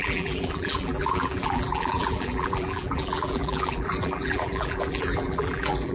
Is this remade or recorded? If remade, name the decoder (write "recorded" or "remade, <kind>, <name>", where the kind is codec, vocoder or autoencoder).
remade, vocoder, BigVGAN v2